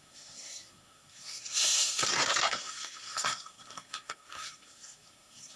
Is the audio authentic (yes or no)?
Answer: no